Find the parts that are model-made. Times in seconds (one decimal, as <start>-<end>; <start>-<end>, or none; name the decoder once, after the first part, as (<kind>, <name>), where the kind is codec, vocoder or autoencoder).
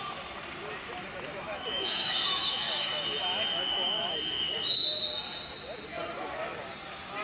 1.0-5.0 (autoencoder, DAC-VAE)